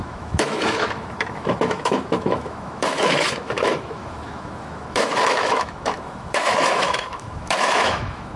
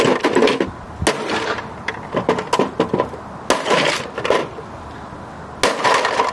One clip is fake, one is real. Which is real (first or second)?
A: second